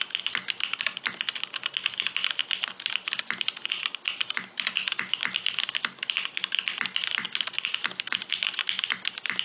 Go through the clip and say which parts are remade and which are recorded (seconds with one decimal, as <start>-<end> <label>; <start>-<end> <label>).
0.0-9.4 recorded